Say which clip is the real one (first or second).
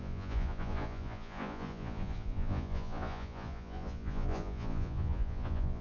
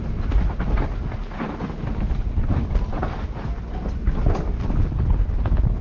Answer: second